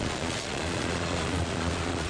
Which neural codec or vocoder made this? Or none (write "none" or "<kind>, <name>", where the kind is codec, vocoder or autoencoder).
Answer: vocoder, Vocos